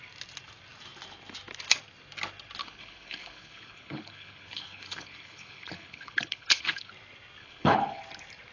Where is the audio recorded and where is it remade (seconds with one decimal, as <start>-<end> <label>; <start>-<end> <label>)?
0.0-2.6 recorded; 2.6-6.9 remade; 6.9-7.4 recorded; 7.4-8.0 remade; 8.0-8.5 recorded